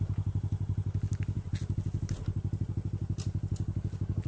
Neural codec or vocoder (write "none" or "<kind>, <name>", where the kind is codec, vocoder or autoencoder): none